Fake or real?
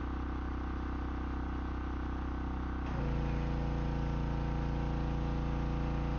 real